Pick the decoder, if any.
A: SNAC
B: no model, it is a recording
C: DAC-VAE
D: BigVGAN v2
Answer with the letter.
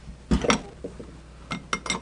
B